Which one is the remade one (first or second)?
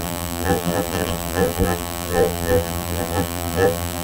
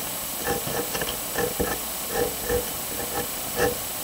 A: first